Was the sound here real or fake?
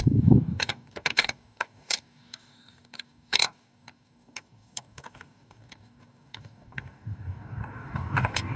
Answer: fake